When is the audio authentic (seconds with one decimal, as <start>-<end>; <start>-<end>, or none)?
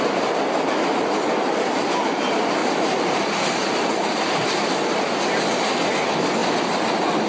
0.0-2.6; 4.7-7.3